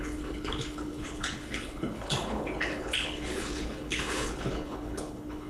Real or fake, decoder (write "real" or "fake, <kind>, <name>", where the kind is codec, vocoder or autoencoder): fake, codec, HILCodec